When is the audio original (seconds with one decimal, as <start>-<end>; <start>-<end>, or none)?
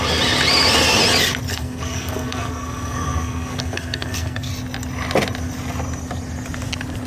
0.0-1.5; 4.5-7.1